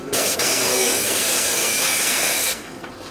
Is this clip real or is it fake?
fake